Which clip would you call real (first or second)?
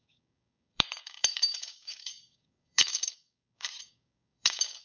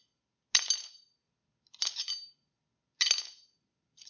second